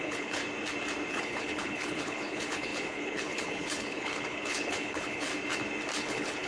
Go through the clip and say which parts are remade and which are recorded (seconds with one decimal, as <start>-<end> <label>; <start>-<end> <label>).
0.0-0.4 remade; 0.4-1.1 recorded; 1.1-5.3 remade; 5.3-6.0 recorded; 6.0-6.5 remade